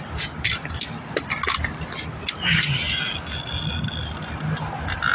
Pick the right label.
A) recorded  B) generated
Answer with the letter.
A